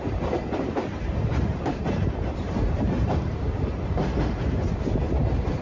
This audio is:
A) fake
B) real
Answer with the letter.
A